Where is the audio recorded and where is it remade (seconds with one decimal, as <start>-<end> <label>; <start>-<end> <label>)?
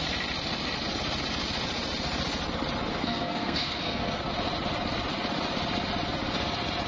0.0-2.9 recorded; 2.9-4.2 remade; 4.2-6.9 recorded